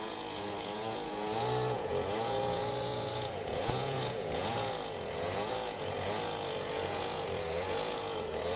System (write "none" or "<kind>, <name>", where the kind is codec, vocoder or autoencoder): vocoder, Vocos